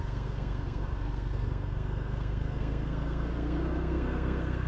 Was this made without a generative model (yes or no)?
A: no